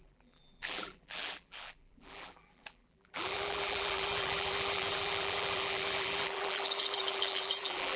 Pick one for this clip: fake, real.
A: fake